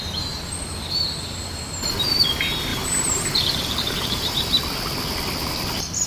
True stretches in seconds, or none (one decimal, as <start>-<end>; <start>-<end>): 0.0-2.7; 4.6-6.1